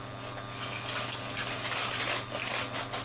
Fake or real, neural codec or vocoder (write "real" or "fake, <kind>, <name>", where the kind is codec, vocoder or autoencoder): real